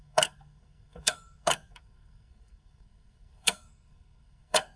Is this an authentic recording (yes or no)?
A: no